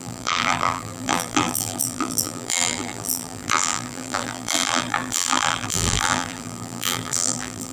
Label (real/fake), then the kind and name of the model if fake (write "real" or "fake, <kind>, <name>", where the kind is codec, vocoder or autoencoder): fake, vocoder, BigVGAN v2